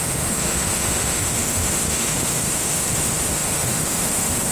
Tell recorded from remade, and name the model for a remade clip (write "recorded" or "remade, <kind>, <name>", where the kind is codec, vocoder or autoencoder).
remade, autoencoder, DAC-VAE